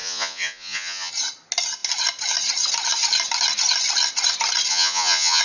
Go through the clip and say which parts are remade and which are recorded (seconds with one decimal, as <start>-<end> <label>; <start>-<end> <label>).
0.0-1.1 remade; 1.1-4.7 recorded; 4.7-5.4 remade